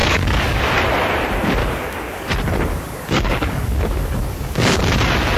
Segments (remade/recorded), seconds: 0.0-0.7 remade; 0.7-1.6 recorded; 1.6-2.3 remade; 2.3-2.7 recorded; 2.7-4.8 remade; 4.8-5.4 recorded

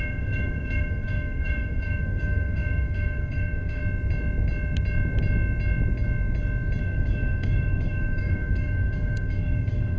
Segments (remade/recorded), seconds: 0.0-3.8 remade; 3.8-6.8 recorded; 6.8-10.0 remade

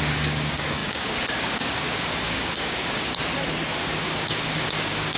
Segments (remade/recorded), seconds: 0.0-3.1 remade; 3.1-3.8 recorded; 3.8-5.2 remade

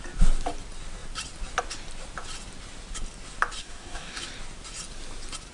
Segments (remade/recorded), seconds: 0.0-3.6 recorded; 3.6-4.2 remade; 4.2-5.5 recorded

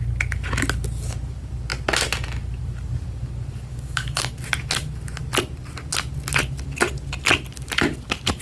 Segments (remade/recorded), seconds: 0.0-3.7 recorded; 3.7-4.3 remade; 4.3-8.4 recorded